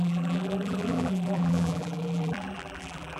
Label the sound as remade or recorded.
remade